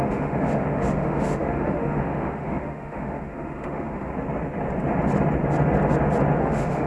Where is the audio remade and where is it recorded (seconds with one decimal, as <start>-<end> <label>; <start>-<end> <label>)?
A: 0.0-4.1 remade; 4.1-6.4 recorded; 6.4-6.9 remade